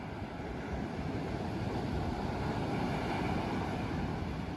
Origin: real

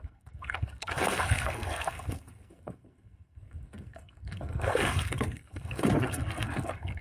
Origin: fake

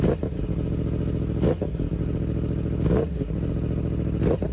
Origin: real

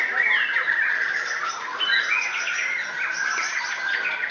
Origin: real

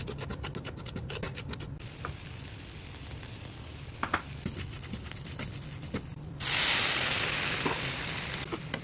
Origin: real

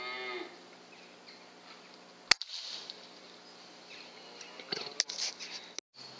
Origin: real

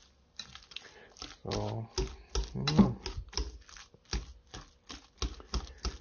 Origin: real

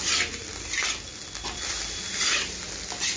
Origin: real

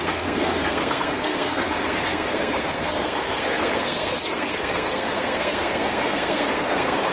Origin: fake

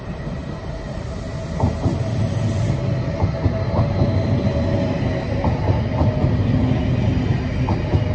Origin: real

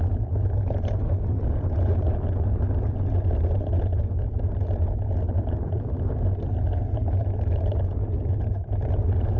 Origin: real